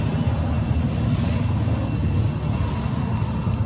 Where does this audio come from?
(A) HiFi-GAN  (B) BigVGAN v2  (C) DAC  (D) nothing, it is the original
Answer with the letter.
D